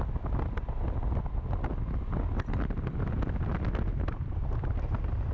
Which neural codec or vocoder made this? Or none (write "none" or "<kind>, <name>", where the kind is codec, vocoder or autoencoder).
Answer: none